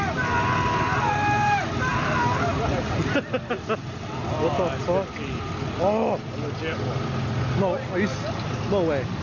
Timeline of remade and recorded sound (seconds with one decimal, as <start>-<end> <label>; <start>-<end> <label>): 0.0-9.2 recorded